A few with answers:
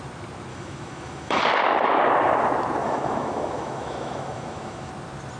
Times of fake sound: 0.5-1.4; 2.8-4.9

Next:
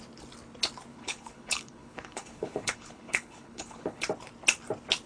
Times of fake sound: 0.9-4.0

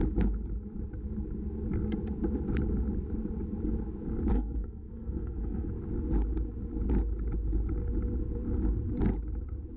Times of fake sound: 4.3-5.8

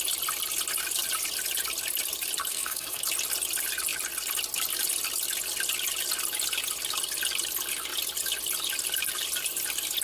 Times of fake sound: 2.5-3.0

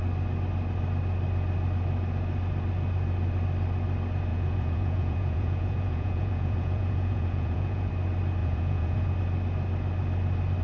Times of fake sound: 4.3-7.9; 8.4-9.1